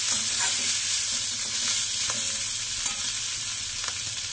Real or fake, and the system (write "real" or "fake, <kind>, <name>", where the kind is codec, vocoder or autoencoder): real